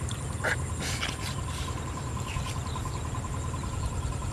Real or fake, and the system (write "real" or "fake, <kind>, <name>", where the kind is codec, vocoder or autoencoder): real